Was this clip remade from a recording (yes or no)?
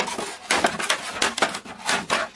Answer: no